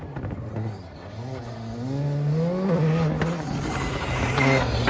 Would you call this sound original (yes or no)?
yes